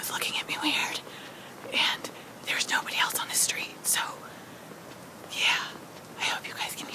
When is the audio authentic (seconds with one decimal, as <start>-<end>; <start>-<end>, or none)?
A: 0.0-6.9